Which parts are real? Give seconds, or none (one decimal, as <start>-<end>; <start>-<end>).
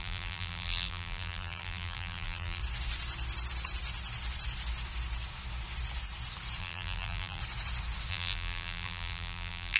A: 2.6-6.6; 7.4-8.1